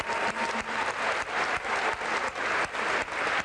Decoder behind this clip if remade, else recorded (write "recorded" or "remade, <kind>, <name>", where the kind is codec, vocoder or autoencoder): recorded